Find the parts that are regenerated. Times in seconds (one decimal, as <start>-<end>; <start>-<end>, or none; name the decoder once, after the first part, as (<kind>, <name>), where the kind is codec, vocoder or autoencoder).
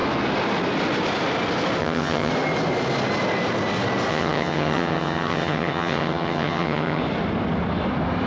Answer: 1.8-2.3 (vocoder, HiFi-GAN); 4.1-7.0